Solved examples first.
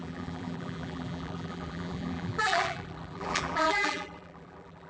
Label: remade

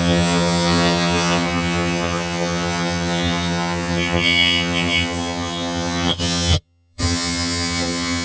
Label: remade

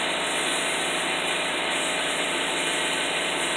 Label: remade